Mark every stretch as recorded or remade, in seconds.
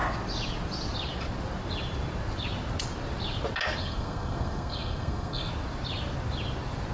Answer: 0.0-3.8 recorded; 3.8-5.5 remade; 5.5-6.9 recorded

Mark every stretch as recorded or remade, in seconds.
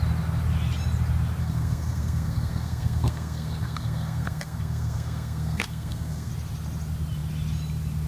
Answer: 0.0-1.4 recorded; 1.4-6.3 remade; 6.3-8.1 recorded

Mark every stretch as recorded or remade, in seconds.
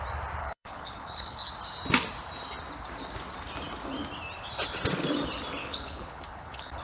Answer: 0.0-0.4 recorded; 0.4-1.5 remade; 1.5-5.6 recorded; 5.6-6.8 remade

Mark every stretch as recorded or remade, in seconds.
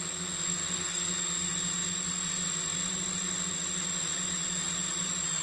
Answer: 0.0-0.5 recorded; 0.5-1.1 remade; 1.1-5.4 recorded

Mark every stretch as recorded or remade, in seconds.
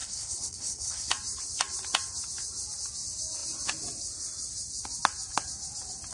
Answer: 0.0-1.1 remade; 1.1-6.1 recorded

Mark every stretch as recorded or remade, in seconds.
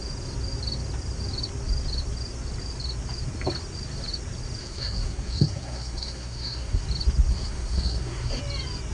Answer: 0.0-4.6 recorded; 4.6-6.8 remade; 6.8-7.3 recorded; 7.3-8.4 remade; 8.4-8.9 recorded